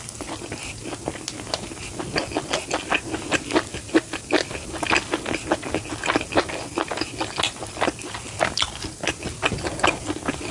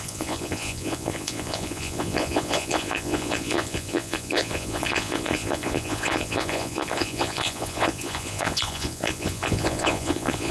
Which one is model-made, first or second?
second